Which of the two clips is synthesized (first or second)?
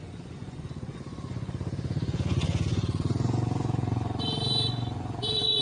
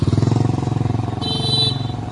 first